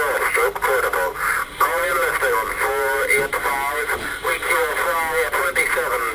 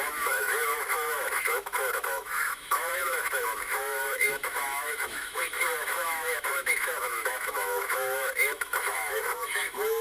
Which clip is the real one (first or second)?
first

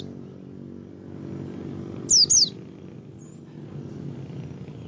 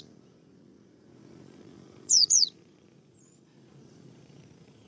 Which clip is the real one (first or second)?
first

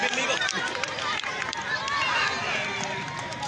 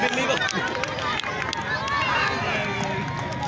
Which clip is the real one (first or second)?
second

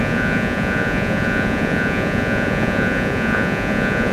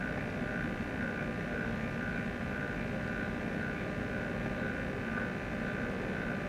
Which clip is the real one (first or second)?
second